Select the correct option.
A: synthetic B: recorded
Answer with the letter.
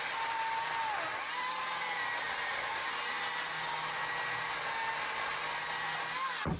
B